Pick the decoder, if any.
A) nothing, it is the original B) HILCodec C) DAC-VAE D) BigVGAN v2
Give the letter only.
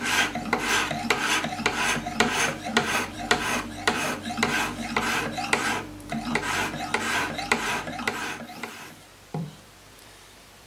D